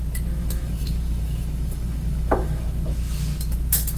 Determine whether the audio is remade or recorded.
remade